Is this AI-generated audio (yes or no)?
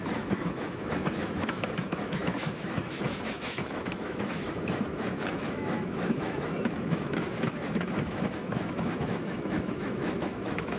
yes